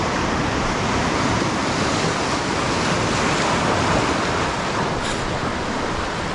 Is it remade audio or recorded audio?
recorded